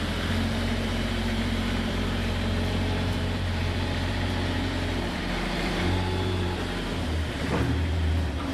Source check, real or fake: fake